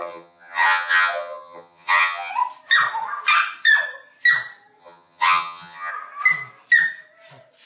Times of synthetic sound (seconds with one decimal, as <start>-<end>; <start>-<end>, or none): 0.0-2.3; 4.8-5.9